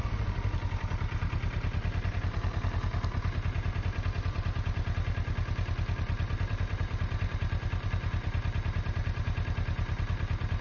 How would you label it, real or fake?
real